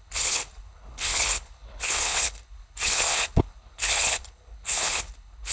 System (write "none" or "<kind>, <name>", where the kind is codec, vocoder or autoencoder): codec, HILCodec